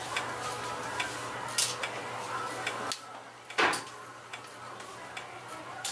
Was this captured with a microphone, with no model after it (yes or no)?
yes